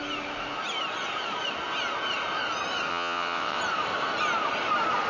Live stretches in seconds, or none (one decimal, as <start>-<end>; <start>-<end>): 0.0-2.9; 3.6-5.1